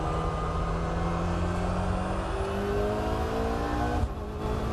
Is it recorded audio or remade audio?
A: recorded